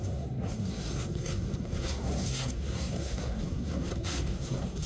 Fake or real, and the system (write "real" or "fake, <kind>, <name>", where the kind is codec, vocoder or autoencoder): fake, codec, SNAC